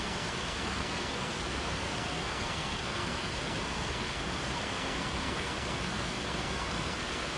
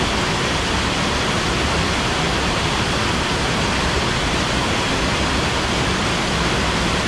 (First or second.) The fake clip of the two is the first